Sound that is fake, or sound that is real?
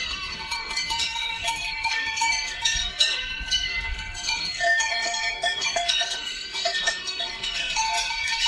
fake